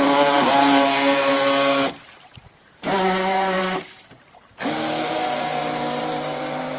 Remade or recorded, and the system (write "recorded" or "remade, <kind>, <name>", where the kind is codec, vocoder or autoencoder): remade, vocoder, BigVGAN v2